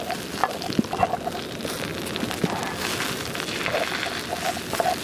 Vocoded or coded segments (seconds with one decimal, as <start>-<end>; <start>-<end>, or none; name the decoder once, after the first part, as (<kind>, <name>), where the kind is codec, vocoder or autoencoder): none